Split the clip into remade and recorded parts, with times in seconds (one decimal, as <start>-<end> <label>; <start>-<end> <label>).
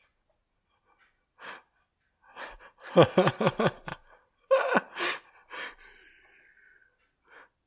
0.0-7.7 recorded